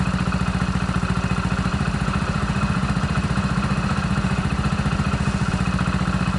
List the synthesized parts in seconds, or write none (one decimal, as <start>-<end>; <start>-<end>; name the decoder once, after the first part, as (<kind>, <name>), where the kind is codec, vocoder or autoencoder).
1.7-5.5 (vocoder, Vocos)